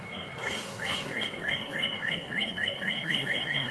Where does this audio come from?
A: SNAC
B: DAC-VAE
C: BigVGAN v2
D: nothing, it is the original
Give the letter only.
A